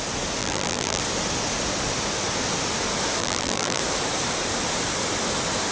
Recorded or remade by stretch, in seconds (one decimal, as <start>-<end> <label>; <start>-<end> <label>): 0.0-0.4 recorded; 0.4-1.0 remade; 1.0-3.2 recorded; 3.2-3.8 remade; 3.8-5.7 recorded